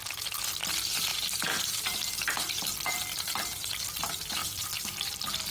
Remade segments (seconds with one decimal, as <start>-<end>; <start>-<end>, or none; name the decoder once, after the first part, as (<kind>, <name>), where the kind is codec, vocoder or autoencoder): 4.4-5.5 (vocoder, BigVGAN v2)